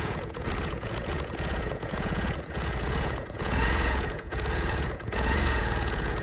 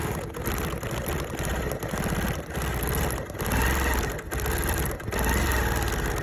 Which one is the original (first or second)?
second